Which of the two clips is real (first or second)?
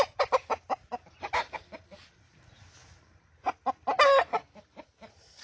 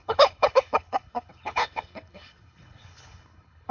first